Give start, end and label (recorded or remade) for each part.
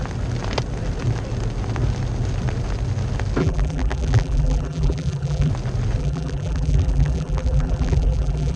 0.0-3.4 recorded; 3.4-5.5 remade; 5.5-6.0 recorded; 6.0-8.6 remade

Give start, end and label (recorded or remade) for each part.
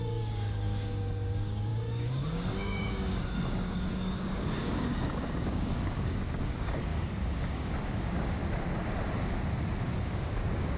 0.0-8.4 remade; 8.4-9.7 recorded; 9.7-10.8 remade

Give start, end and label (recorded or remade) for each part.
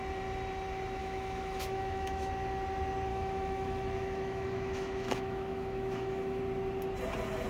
0.0-1.0 recorded; 1.0-2.3 remade; 2.3-3.1 recorded; 3.1-6.4 remade; 6.4-7.5 recorded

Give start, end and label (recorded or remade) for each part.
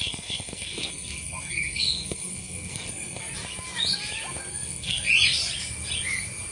0.0-3.2 remade; 3.2-4.5 recorded; 4.5-5.1 remade; 5.1-6.5 recorded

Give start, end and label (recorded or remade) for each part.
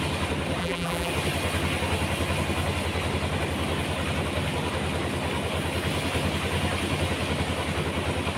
0.0-0.6 recorded; 0.6-1.1 remade; 1.1-8.4 recorded